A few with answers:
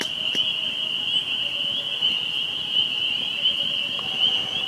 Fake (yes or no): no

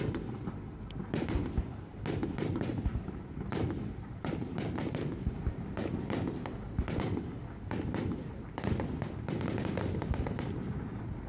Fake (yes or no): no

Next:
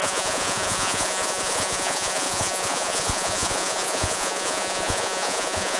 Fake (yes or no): yes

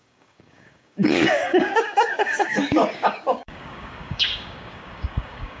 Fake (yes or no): yes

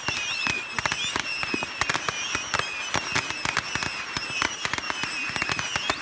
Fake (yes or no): no